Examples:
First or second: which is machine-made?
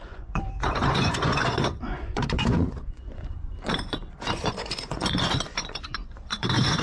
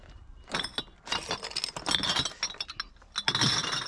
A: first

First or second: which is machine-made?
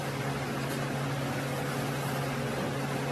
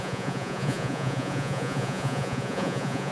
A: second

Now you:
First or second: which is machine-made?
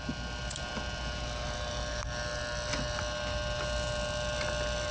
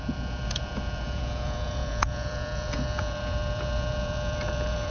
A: second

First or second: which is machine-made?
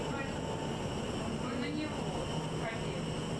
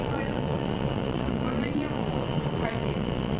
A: second